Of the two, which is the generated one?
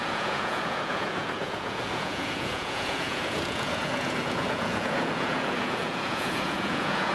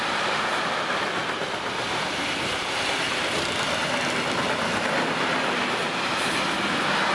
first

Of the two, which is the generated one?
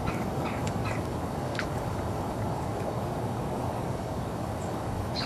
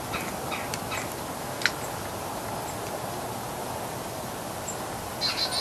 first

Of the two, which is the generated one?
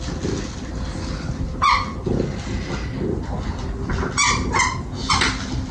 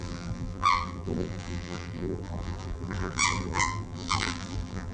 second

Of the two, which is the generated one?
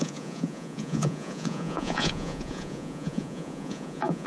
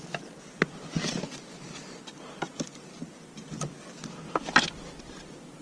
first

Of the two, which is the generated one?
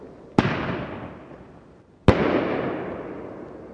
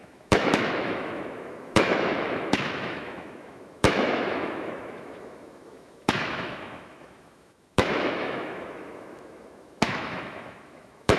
second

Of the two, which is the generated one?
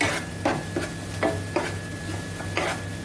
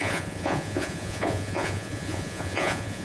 second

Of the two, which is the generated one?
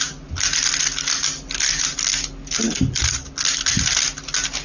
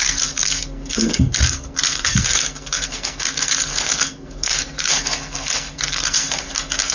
second